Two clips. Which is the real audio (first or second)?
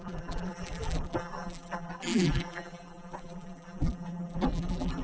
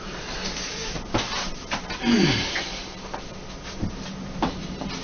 second